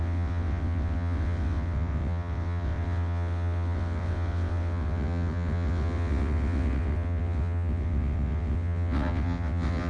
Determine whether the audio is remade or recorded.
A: remade